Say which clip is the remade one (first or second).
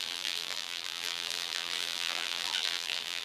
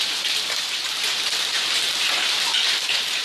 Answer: first